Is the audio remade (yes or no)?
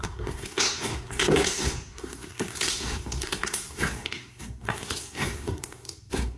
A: yes